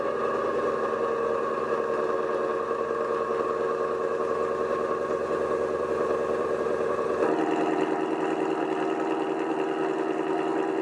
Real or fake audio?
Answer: real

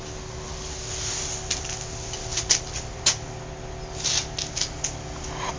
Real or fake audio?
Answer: real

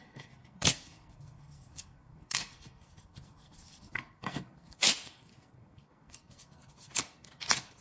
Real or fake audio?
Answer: fake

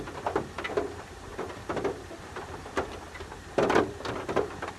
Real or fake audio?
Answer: real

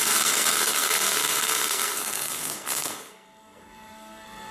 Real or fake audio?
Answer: fake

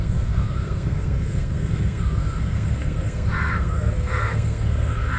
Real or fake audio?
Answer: fake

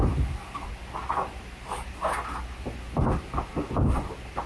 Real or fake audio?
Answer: real